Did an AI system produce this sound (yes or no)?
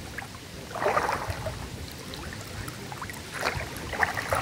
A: no